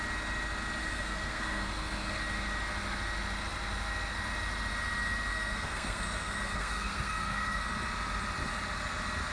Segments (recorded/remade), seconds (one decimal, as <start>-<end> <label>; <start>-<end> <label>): 0.0-0.8 recorded; 0.8-2.2 remade; 2.2-5.3 recorded; 5.3-7.6 remade; 7.6-9.3 recorded